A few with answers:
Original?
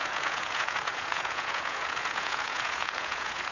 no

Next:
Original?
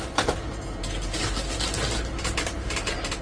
yes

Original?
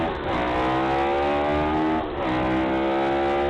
yes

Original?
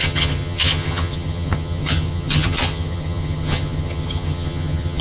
no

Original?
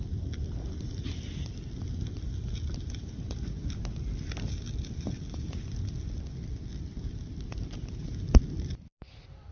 no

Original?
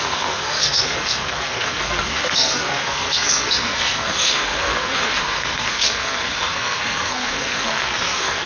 no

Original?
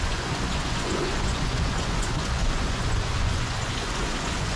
no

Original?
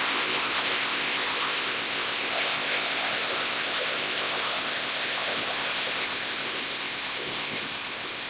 no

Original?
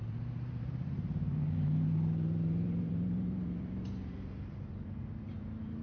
no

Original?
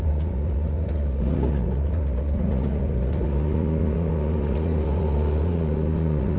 no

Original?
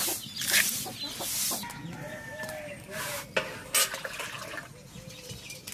yes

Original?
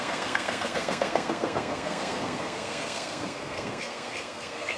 no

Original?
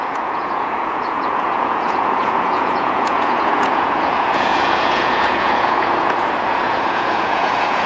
no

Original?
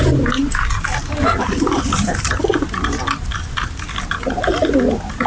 yes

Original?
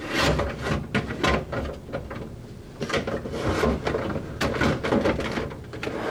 yes